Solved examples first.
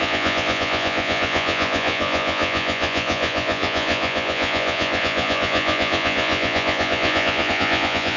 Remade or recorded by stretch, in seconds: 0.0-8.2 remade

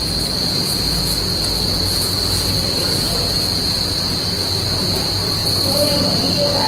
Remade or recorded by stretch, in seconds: 0.0-6.7 recorded

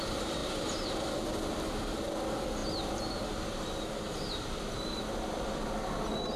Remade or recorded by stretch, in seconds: 0.0-0.4 recorded; 0.4-1.1 remade; 1.1-2.6 recorded; 2.6-5.0 remade; 5.0-6.4 recorded

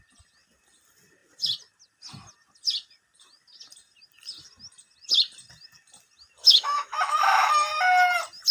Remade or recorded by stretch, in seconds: 0.0-6.5 recorded; 6.5-7.5 remade; 7.5-8.5 recorded